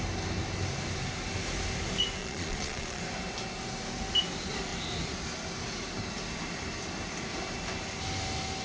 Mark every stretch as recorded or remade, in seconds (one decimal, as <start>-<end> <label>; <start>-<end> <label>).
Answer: 0.0-2.2 recorded; 2.2-3.0 remade; 3.0-8.6 recorded